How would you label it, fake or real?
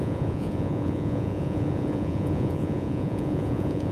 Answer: fake